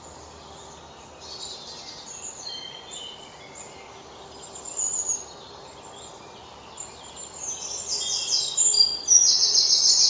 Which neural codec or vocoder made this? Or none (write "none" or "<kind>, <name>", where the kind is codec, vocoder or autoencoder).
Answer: none